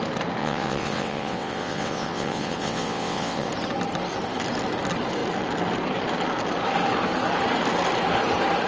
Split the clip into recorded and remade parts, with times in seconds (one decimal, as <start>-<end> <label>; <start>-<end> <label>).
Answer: 0.0-0.4 recorded; 0.4-3.5 remade; 3.5-8.7 recorded